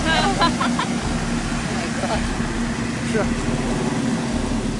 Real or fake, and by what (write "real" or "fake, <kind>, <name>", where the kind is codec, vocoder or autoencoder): real